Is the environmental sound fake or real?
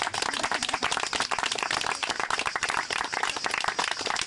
real